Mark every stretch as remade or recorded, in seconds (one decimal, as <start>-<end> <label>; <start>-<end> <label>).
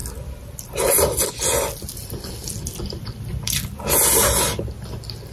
0.0-1.3 remade; 1.3-2.0 recorded; 2.0-3.6 remade; 3.6-5.3 recorded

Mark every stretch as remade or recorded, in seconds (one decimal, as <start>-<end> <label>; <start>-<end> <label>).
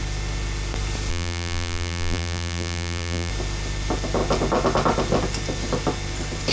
0.0-1.1 recorded; 1.1-3.3 remade; 3.3-6.5 recorded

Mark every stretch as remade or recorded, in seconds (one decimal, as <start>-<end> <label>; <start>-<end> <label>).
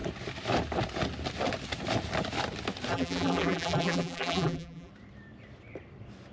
0.0-2.9 recorded; 2.9-4.9 remade; 4.9-6.3 recorded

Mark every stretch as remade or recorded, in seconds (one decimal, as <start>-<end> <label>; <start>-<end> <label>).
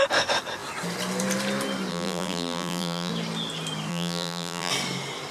0.0-1.9 recorded; 1.9-3.1 remade; 3.1-3.9 recorded; 3.9-4.7 remade; 4.7-5.3 recorded